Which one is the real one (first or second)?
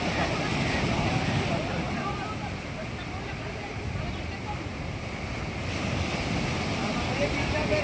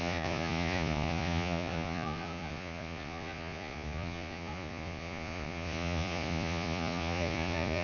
first